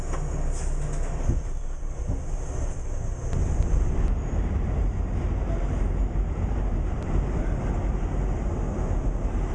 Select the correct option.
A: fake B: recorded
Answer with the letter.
B